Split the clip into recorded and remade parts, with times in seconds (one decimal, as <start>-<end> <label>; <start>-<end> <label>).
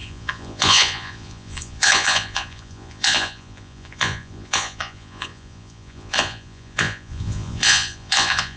0.0-8.6 remade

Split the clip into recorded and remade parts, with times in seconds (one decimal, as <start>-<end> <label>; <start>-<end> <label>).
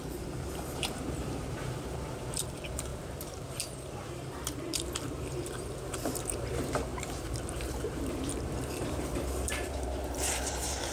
0.0-10.9 remade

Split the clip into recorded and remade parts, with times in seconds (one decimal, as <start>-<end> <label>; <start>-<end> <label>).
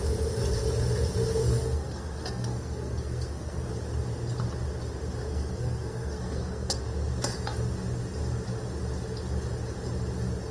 0.0-1.4 recorded; 1.4-3.7 remade; 3.7-5.3 recorded; 5.3-6.8 remade; 6.8-10.5 recorded